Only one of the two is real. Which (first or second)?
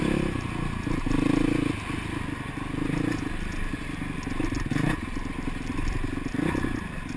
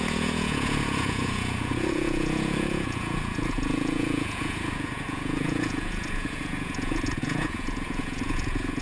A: first